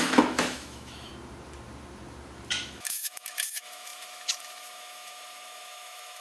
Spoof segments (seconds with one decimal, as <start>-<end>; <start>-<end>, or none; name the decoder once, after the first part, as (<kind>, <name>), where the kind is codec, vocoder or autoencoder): 0.0-1.1 (autoencoder, DAC-VAE); 2.5-6.2

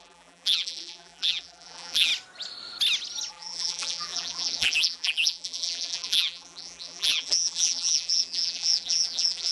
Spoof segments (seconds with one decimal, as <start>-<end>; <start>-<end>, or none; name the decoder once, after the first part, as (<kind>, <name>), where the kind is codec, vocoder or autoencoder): 0.0-2.1 (vocoder, BigVGAN v2); 3.3-9.5

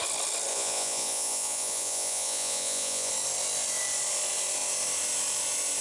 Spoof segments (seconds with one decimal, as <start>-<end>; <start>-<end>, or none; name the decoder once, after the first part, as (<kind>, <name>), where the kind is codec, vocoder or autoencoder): 0.5-3.1 (vocoder, Vocos)

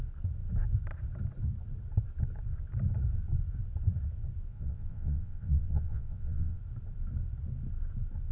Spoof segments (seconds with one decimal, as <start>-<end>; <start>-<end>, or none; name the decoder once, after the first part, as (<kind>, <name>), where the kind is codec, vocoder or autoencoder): 4.5-6.6 (vocoder, WaveNeXt)

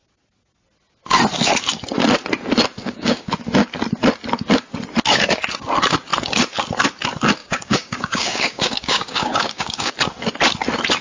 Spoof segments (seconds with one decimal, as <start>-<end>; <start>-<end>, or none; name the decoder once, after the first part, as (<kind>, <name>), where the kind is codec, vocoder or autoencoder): 2.8-3.3 (codec, DAC); 7.4-9.9

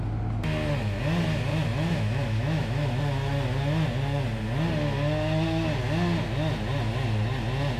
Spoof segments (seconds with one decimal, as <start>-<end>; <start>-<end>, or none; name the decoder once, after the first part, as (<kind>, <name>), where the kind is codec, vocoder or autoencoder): 1.5-3.0 (autoencoder, DAC-VAE)